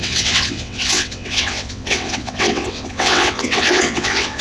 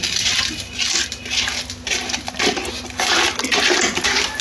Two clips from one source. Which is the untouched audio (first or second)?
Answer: second